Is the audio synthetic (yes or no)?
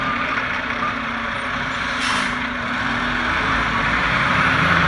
yes